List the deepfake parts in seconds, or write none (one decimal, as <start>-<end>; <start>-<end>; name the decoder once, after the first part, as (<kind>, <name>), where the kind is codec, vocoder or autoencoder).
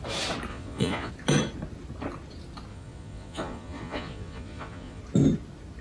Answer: 0.5-1.1 (vocoder, Vocos); 2.7-5.0